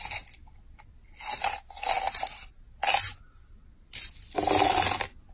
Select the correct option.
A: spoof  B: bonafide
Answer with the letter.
B